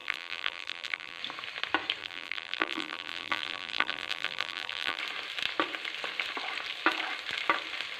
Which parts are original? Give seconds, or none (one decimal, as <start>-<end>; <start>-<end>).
1.2-2.0; 5.0-8.0